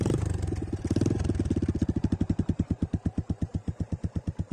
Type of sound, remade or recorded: remade